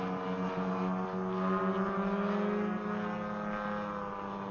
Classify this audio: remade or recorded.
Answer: recorded